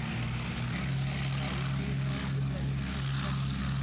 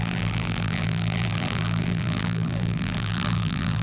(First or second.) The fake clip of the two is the second